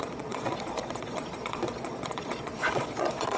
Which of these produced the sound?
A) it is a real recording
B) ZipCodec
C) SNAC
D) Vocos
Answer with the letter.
D